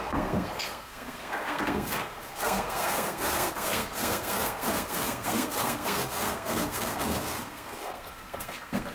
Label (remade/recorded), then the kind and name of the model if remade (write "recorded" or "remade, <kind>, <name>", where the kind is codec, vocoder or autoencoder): remade, codec, SNAC